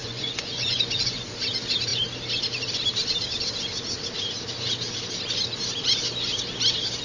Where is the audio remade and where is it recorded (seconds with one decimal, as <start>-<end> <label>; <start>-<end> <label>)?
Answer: 0.0-1.3 remade; 1.3-7.0 recorded